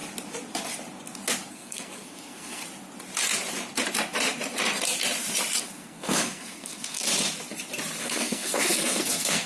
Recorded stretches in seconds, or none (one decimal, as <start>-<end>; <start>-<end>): 0.0-1.5; 2.6-5.6; 7.1-8.0